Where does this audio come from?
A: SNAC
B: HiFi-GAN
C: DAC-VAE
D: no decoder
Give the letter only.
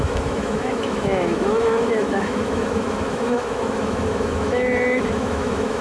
C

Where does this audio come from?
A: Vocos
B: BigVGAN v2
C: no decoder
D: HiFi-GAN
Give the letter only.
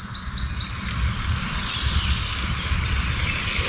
C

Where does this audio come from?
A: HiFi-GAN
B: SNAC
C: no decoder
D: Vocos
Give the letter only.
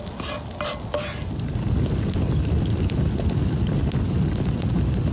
C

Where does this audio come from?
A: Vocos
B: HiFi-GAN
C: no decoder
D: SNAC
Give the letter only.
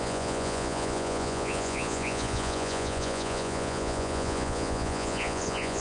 A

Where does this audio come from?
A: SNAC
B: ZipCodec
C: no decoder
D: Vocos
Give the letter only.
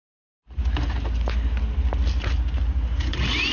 C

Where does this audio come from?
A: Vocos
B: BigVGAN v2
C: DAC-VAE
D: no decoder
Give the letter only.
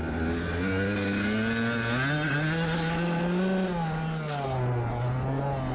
D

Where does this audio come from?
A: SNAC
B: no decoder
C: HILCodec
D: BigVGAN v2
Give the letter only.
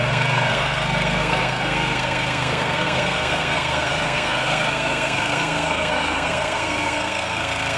A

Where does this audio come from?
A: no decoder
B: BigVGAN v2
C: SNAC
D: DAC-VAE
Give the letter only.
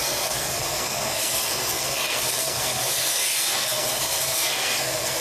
C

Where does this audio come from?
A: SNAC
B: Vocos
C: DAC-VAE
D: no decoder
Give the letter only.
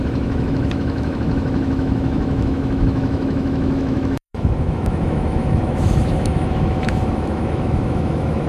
C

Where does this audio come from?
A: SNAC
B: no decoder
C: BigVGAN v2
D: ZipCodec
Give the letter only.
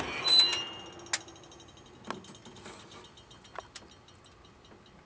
B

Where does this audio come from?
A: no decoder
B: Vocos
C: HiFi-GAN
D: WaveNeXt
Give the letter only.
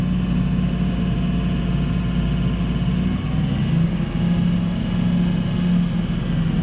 A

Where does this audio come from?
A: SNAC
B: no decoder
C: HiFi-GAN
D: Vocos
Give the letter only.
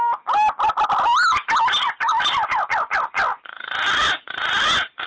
B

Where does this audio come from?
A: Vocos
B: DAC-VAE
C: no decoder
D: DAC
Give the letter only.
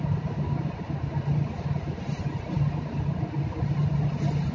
C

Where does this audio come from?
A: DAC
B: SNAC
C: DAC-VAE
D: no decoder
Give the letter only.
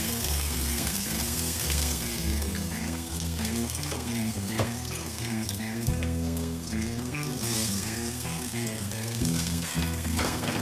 B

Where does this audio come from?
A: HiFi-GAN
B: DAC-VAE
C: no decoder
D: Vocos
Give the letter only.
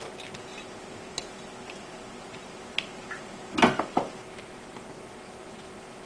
C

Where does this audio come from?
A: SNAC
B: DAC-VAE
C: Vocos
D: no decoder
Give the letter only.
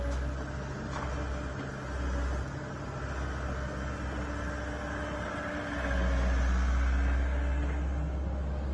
D